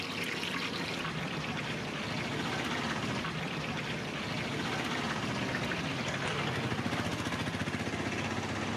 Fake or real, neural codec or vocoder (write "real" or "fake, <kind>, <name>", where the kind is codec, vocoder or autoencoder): real